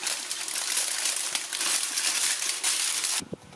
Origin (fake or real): real